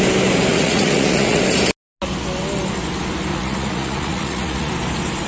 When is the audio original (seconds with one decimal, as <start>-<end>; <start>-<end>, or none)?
0.0-0.5; 1.4-3.3; 4.7-5.3